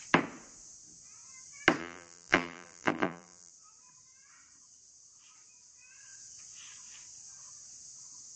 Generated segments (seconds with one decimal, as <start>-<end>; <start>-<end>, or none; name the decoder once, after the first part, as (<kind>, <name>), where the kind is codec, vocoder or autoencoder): 1.8-3.5 (vocoder, BigVGAN v2)